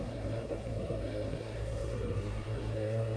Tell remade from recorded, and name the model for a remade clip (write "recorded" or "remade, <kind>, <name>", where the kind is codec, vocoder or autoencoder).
remade, codec, SNAC